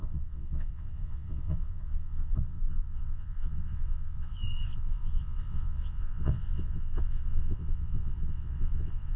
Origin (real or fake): fake